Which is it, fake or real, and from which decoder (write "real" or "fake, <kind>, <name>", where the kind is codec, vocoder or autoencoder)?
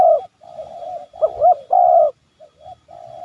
real